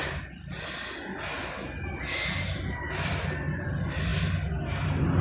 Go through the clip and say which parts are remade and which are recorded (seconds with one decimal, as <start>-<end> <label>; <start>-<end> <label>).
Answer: 0.0-5.2 recorded